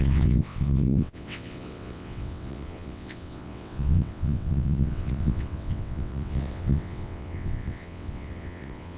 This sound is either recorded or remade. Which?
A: remade